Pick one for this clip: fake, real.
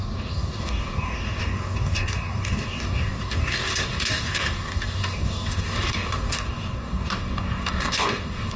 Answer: fake